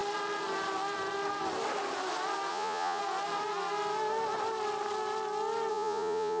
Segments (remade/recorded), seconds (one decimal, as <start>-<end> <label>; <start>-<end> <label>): 0.0-2.5 recorded; 2.5-3.0 remade; 3.0-5.7 recorded; 5.7-6.4 remade